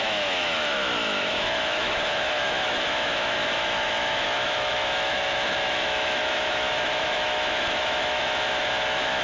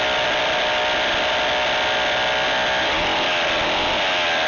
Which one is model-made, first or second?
first